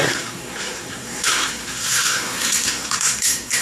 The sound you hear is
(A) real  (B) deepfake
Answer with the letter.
B